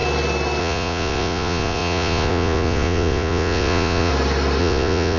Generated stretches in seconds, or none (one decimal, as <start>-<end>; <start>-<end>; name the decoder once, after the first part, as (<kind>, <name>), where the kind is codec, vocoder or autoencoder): 0.6-4.1 (vocoder, Vocos); 4.6-5.2